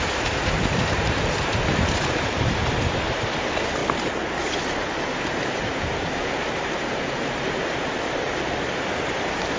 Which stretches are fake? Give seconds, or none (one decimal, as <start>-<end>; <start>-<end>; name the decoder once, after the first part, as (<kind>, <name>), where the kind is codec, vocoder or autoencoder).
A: 0.0-3.8 (vocoder, BigVGAN v2); 4.7-9.6